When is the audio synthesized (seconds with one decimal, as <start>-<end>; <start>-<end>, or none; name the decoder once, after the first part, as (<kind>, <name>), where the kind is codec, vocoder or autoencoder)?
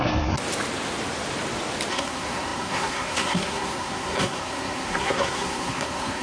0.0-0.4 (codec, SNAC); 1.9-6.2